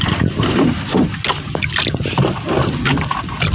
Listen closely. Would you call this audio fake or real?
real